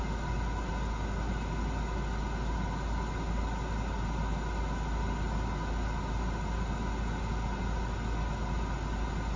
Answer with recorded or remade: recorded